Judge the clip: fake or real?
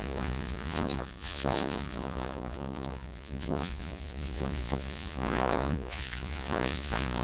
fake